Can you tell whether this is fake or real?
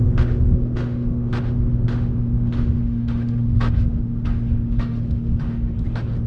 fake